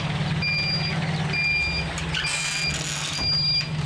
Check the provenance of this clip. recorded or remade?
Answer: recorded